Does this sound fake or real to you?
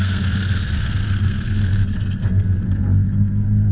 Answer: fake